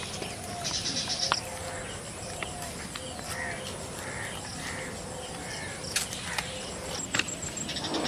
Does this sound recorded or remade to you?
recorded